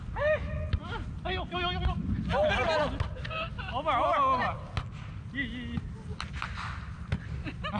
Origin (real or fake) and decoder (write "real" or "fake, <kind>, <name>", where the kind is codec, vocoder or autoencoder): real